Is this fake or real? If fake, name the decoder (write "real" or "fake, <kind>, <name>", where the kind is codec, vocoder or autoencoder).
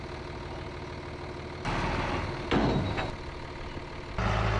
real